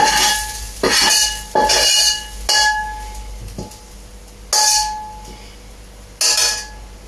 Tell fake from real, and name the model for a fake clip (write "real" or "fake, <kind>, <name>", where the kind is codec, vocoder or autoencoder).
real